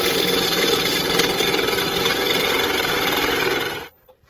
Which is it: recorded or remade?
remade